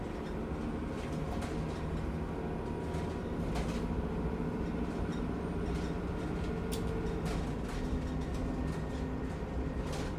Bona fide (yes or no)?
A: yes